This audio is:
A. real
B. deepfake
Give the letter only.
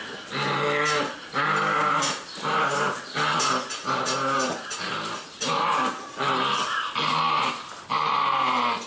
A